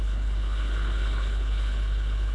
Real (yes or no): no